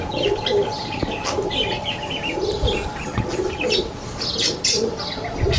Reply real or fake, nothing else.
real